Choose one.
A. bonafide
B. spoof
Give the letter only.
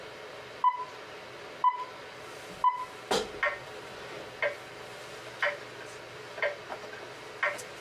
A